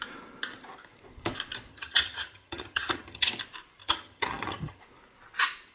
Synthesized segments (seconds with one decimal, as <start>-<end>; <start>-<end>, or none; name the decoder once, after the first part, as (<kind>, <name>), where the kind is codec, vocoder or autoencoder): 1.7-3.3 (vocoder, HiFi-GAN); 3.8-4.8